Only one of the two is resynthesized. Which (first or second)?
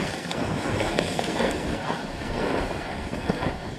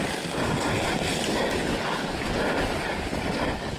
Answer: first